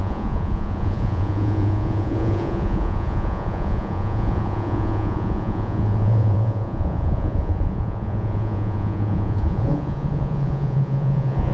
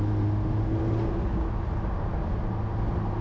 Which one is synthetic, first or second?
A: first